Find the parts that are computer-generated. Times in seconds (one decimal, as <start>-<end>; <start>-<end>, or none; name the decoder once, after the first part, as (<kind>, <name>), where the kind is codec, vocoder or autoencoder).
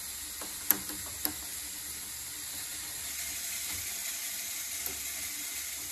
none